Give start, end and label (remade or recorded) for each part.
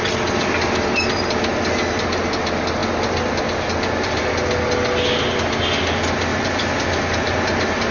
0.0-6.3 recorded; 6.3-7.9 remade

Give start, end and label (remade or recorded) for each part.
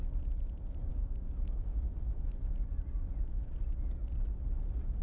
0.0-0.9 recorded; 0.9-1.8 remade; 1.8-5.0 recorded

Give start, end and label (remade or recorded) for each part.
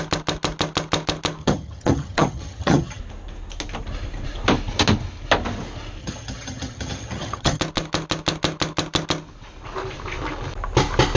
0.0-1.4 recorded; 1.4-3.0 remade; 3.0-6.0 recorded; 6.0-7.6 remade; 7.6-11.2 recorded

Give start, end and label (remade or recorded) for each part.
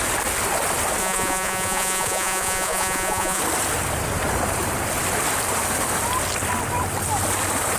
0.0-1.0 recorded; 1.0-3.4 remade; 3.4-7.8 recorded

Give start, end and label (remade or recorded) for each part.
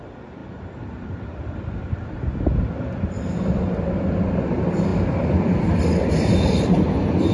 0.0-4.9 recorded; 4.9-6.1 remade; 6.1-7.3 recorded